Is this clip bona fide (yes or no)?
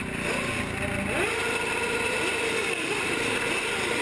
yes